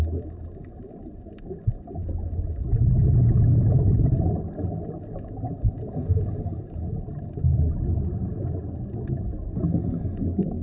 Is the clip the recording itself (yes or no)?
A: yes